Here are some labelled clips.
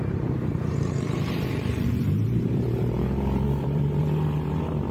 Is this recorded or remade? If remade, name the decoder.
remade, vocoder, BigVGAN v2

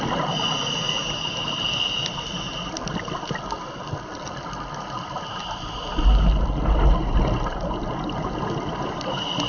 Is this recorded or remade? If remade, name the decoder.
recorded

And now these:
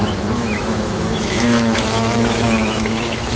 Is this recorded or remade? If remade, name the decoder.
remade, autoencoder, DAC-VAE